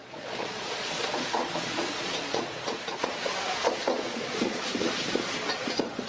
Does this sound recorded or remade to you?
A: remade